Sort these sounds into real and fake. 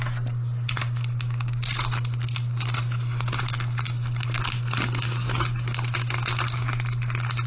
real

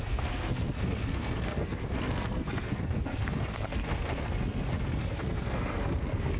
fake